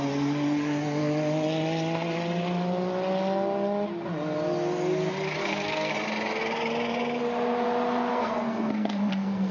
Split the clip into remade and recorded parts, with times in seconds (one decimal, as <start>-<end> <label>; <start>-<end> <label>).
0.0-5.4 recorded; 5.4-5.9 remade; 5.9-8.1 recorded; 8.1-9.5 remade